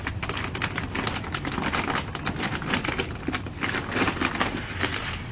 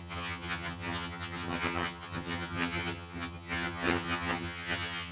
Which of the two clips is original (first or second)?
first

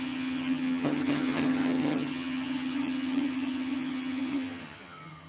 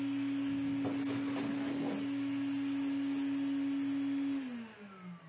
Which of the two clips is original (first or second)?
second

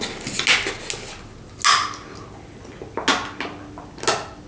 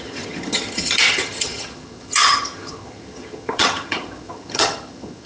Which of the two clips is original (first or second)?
first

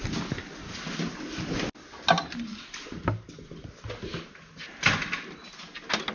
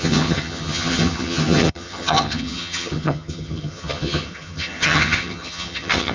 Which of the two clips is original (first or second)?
first